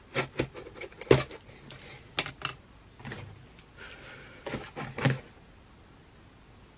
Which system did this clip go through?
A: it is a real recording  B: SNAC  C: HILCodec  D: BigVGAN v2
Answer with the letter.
A